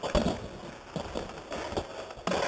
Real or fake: real